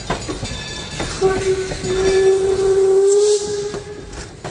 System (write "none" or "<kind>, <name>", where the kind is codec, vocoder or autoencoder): none